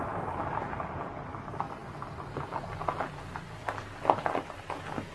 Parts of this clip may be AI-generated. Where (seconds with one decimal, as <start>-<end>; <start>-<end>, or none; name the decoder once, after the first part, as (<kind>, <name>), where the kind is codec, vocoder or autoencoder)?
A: none